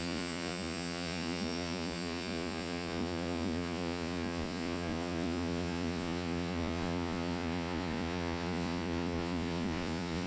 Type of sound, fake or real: fake